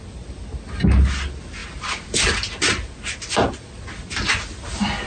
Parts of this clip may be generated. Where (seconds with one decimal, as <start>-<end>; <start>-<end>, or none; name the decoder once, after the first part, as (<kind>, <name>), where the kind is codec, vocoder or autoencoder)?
none